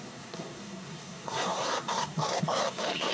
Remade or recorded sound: remade